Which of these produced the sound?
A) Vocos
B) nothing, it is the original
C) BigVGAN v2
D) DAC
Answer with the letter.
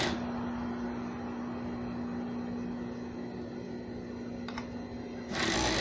B